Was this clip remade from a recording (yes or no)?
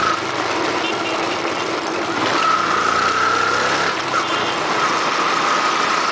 no